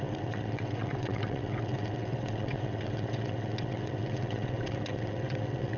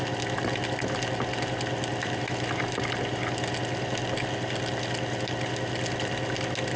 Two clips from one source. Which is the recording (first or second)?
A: second